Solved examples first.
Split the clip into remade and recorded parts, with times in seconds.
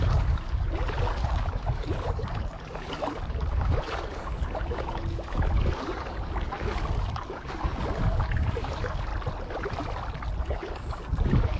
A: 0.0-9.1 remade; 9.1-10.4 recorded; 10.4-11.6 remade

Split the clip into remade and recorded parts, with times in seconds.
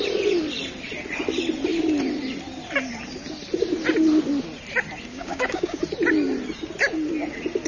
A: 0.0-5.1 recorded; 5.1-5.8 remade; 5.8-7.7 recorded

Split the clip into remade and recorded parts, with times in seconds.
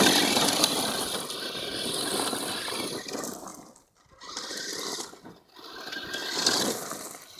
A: 0.0-7.4 recorded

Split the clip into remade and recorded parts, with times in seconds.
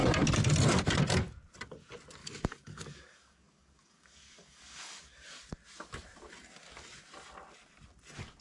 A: 0.0-2.2 recorded; 2.2-5.4 remade; 5.4-8.4 recorded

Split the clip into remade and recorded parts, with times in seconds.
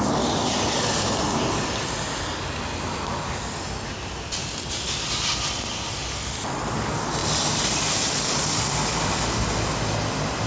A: 0.0-10.5 recorded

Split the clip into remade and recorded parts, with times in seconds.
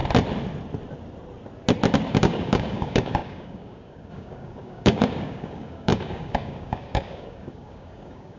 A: 0.0-2.1 recorded; 2.1-8.4 remade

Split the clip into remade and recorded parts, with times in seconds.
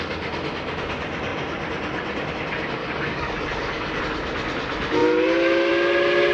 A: 0.0-2.8 recorded; 2.8-4.0 remade; 4.0-6.3 recorded